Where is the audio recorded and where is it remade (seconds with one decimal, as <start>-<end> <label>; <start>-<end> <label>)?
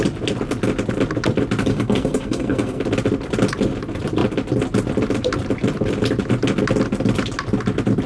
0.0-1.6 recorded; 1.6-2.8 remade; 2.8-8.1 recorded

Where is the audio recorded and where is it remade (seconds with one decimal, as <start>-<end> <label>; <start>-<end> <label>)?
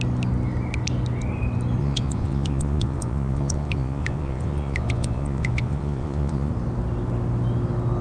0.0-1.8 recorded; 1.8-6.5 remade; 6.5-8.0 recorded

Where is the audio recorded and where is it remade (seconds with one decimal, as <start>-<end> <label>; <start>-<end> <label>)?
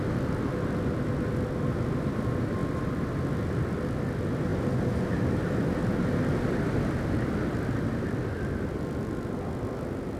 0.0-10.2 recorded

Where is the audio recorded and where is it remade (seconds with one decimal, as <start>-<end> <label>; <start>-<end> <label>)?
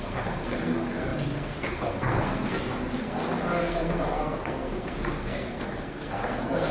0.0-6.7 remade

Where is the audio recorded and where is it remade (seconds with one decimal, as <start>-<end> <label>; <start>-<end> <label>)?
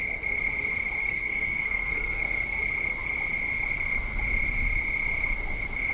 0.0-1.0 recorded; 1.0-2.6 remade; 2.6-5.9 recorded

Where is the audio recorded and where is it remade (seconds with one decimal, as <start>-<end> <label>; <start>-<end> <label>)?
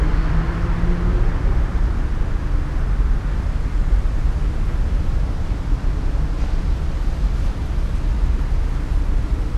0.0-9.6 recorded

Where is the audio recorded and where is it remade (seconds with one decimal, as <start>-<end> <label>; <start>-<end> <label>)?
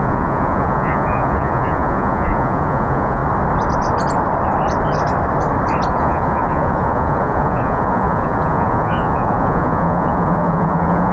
0.0-3.2 remade; 3.2-5.9 recorded; 5.9-11.1 remade